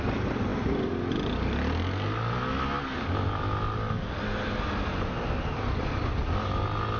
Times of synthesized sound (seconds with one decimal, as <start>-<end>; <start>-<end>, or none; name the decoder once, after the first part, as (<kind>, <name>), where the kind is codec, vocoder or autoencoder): none